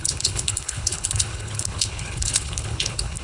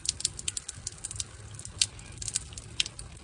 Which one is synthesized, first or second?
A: first